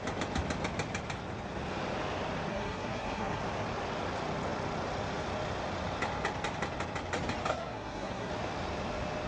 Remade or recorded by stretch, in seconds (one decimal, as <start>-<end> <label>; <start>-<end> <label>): 0.0-2.5 recorded; 2.5-3.4 remade; 3.4-7.5 recorded; 7.5-8.3 remade; 8.3-9.3 recorded